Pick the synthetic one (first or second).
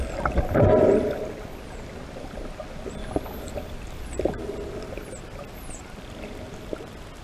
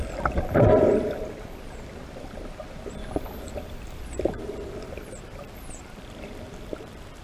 second